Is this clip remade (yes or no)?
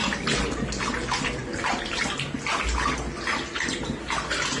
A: no